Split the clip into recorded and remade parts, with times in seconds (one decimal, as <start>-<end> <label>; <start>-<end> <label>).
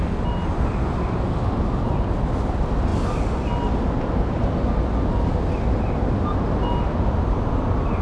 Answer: 0.0-8.0 recorded